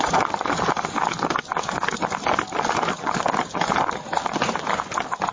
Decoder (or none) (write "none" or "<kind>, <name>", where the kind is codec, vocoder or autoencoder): none